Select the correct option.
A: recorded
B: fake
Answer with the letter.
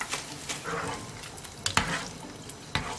A